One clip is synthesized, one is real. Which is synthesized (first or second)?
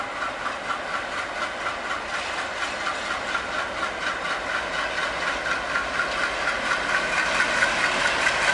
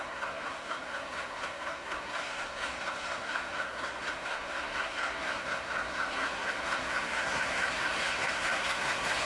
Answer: second